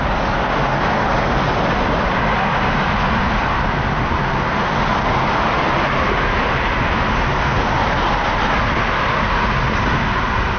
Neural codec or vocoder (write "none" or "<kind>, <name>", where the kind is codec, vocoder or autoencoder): none